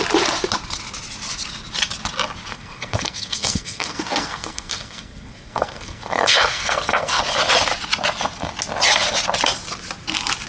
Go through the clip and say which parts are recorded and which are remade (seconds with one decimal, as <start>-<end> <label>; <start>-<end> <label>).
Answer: 0.0-2.5 recorded; 2.5-7.2 remade; 7.2-10.5 recorded